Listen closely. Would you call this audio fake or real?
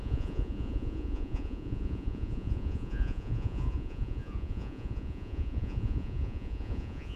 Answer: fake